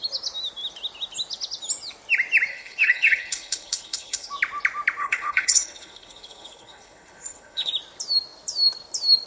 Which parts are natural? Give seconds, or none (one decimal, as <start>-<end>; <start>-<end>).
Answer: 0.0-2.5; 4.3-5.0; 7.7-9.3